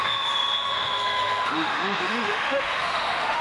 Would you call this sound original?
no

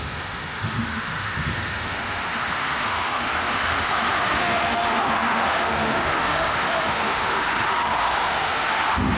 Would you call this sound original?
no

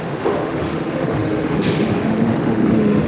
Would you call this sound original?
no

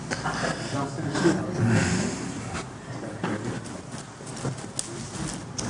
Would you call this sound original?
yes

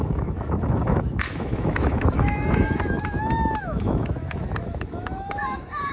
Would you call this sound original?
no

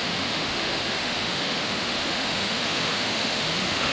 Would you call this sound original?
no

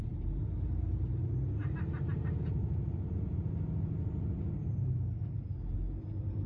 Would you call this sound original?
yes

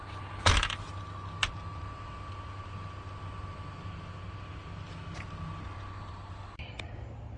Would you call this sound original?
yes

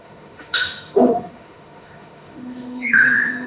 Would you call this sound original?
no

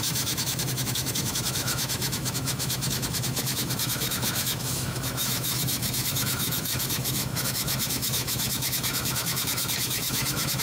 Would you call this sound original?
no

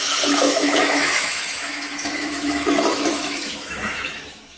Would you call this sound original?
no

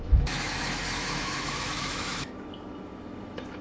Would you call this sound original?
no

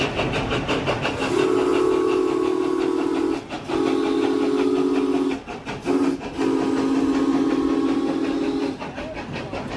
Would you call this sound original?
yes